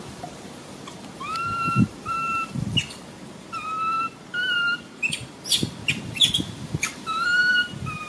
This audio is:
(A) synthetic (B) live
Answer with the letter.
A